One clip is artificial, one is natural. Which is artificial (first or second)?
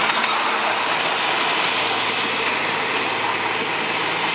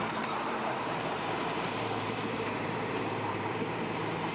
second